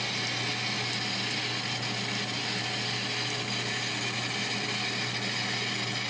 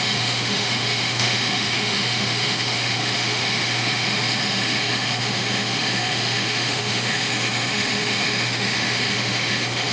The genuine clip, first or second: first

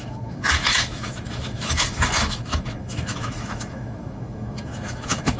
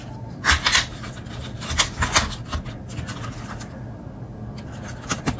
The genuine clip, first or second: second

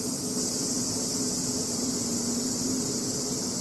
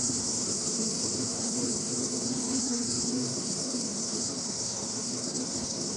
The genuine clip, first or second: first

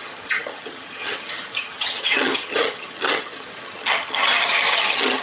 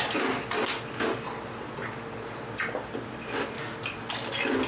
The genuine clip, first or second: second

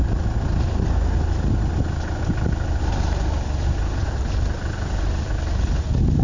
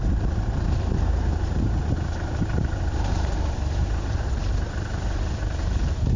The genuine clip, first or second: first